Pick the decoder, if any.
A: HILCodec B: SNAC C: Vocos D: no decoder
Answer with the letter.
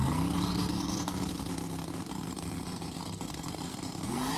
B